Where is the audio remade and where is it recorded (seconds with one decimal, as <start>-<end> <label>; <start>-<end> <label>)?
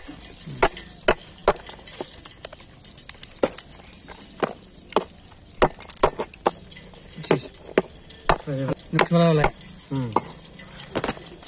0.0-11.5 recorded